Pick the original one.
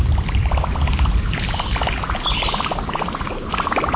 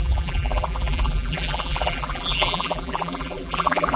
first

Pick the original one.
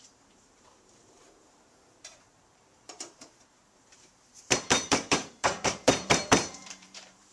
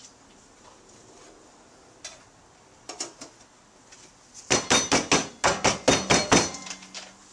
second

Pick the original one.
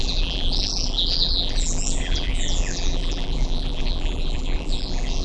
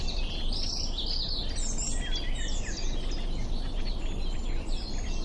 second